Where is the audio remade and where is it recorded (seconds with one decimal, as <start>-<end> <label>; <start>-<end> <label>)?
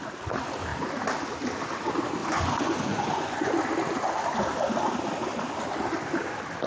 0.0-2.2 recorded; 2.2-3.5 remade; 3.5-6.7 recorded